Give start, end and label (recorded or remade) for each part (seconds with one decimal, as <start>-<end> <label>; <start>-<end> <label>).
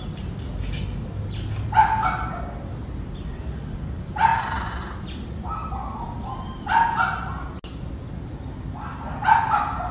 0.0-9.9 recorded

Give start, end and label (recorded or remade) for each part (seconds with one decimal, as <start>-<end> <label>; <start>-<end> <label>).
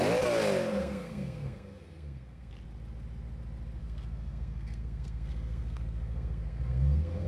0.0-0.7 recorded; 0.7-2.5 remade; 2.5-3.8 recorded; 3.8-7.3 remade